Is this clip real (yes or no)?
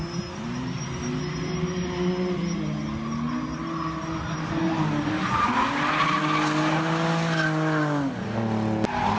yes